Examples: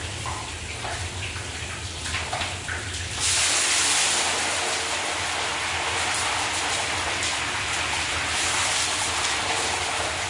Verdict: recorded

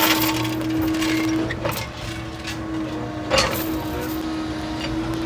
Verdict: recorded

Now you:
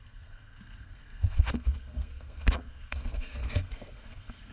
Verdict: remade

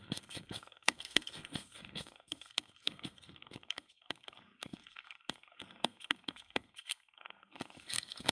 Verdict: remade